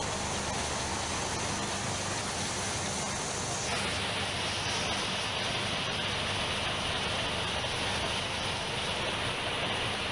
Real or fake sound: real